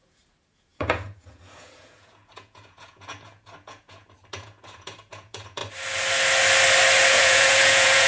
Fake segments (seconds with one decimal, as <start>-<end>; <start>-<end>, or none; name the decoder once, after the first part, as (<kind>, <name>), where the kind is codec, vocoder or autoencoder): 0.0-5.6 (vocoder, Vocos); 7.1-8.1